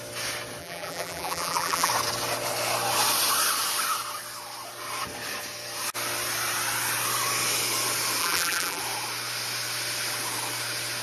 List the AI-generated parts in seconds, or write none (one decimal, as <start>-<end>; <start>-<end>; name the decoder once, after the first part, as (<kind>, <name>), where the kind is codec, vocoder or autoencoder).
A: 0.6-1.9 (vocoder, BigVGAN v2); 8.2-8.8